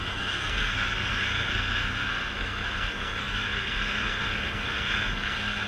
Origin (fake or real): fake